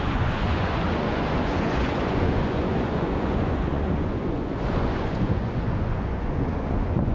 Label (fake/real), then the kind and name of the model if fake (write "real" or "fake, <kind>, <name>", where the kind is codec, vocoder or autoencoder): fake, vocoder, Vocos